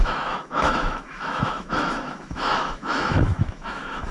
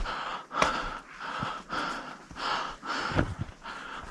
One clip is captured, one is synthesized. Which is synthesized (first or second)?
first